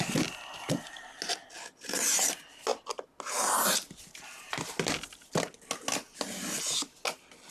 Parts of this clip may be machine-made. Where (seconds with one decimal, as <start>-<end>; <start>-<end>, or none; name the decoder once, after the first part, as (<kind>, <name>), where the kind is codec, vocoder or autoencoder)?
none